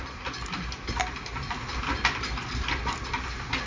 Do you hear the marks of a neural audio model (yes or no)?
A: no